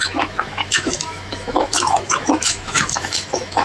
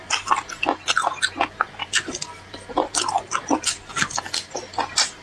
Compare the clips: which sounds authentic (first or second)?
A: second